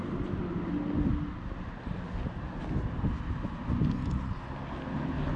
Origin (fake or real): real